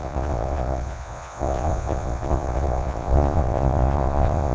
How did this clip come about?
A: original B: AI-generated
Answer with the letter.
B